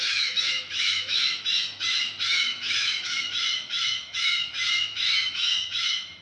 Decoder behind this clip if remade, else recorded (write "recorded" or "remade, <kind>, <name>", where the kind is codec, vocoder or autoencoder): remade, autoencoder, DAC-VAE